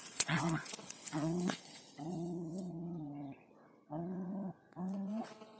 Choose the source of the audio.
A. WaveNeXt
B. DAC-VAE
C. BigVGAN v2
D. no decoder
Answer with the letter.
A